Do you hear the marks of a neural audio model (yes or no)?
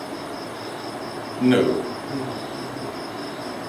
no